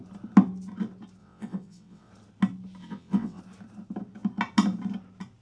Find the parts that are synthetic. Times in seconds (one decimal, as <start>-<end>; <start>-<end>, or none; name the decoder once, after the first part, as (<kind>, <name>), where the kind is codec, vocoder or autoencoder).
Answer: 1.2-2.1 (vocoder, WaveNeXt); 2.8-3.4